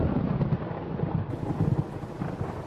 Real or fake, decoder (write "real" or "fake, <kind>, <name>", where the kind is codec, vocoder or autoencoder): real